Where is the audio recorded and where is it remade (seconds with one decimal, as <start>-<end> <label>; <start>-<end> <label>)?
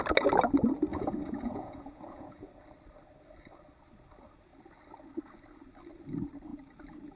0.0-0.9 recorded; 0.9-2.5 remade; 2.5-7.2 recorded